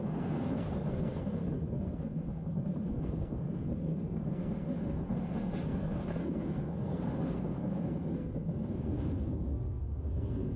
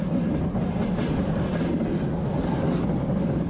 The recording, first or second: second